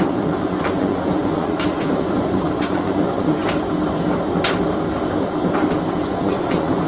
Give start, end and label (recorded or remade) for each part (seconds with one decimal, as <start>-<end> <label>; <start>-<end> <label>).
0.0-3.4 remade; 3.4-5.9 recorded; 5.9-6.9 remade